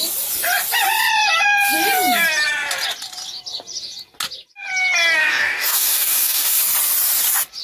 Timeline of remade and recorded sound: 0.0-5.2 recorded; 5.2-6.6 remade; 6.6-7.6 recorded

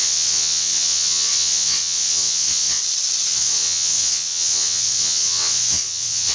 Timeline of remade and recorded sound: 0.0-2.8 remade; 2.8-3.3 recorded; 3.3-6.3 remade

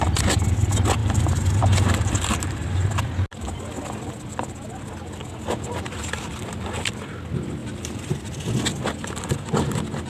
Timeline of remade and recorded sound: 0.0-1.0 recorded; 1.0-3.0 remade; 3.0-7.6 recorded; 7.6-8.1 remade; 8.1-10.1 recorded

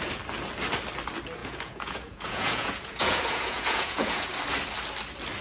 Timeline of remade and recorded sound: 0.0-1.4 recorded; 1.4-4.3 remade; 4.3-5.4 recorded